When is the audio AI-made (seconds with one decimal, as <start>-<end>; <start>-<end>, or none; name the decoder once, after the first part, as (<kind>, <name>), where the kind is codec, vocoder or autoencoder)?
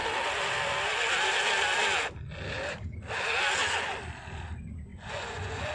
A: 4.9-5.7 (vocoder, Vocos)